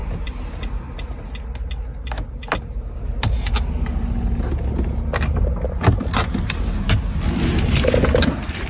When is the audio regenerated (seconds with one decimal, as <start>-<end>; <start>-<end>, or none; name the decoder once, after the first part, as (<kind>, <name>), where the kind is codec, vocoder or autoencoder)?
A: none